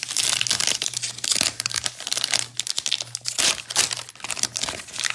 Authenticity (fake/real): real